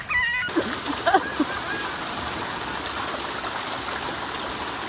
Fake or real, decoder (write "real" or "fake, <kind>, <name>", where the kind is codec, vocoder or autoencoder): real